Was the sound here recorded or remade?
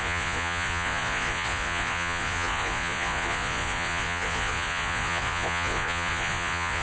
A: remade